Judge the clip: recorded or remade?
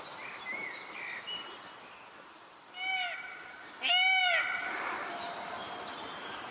recorded